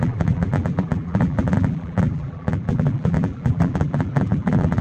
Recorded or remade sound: remade